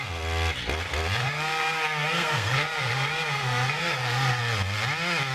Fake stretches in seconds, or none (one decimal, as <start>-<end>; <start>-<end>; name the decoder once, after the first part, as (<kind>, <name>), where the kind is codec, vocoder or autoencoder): 1.2-4.4 (codec, SNAC)